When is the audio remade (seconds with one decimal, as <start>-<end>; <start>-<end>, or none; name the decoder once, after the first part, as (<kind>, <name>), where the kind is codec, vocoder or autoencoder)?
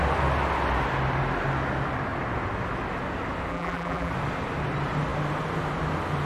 3.5-4.1 (vocoder, BigVGAN v2)